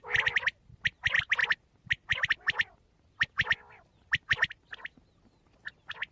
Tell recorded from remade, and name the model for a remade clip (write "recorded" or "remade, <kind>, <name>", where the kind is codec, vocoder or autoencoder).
recorded